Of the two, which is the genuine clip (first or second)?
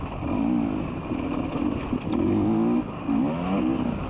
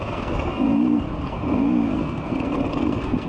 first